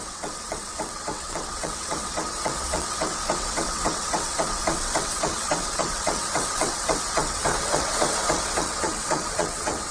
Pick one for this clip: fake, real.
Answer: fake